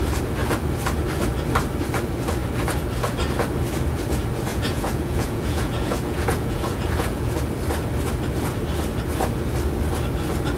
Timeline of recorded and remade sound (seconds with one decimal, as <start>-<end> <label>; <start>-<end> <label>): 0.0-4.5 recorded; 4.5-7.4 remade; 7.4-10.6 recorded